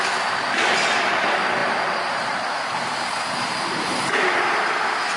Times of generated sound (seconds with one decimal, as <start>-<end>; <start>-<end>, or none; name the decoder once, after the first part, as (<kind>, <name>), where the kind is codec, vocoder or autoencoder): 1.6-4.7 (vocoder, BigVGAN v2)